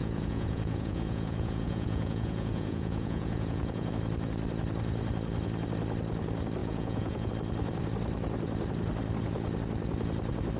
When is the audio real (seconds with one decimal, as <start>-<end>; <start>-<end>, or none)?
3.9-6.6; 7.3-10.6